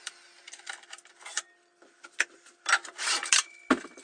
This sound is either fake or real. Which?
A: real